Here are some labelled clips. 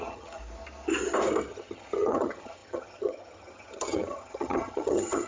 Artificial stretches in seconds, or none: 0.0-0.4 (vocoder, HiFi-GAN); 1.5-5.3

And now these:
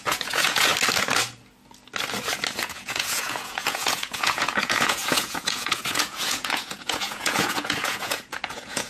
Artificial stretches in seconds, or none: 0.0-0.7 (vocoder, Vocos); 2.6-8.9

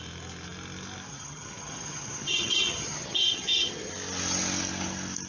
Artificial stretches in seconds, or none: 1.1-3.9 (vocoder, HiFi-GAN)

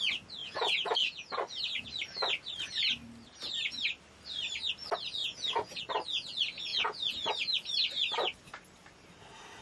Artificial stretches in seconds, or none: 0.4-1.4 (vocoder, Vocos); 5.2-5.8; 6.7-7.3

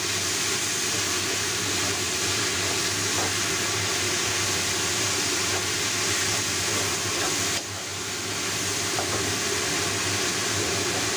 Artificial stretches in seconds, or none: none

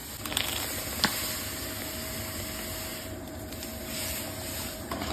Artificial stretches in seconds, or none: 2.9-5.1 (vocoder, BigVGAN v2)